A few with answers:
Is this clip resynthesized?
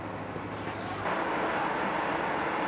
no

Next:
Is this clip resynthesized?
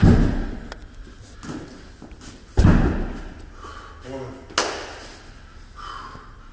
no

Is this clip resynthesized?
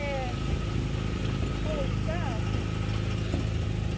no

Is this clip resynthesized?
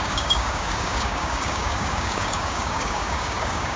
yes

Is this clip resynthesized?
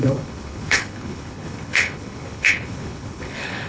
yes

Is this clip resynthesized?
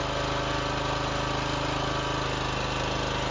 no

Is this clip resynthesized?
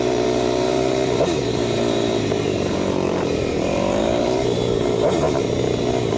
yes